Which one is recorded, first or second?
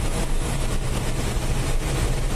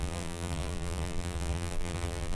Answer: first